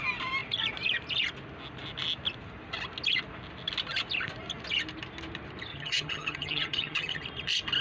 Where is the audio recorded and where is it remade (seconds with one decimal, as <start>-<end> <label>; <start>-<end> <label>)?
0.0-5.7 recorded; 5.7-7.2 remade; 7.2-7.8 recorded